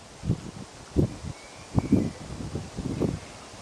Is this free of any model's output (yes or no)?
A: yes